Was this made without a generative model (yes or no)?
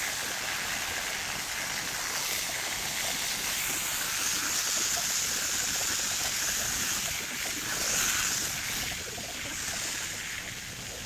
yes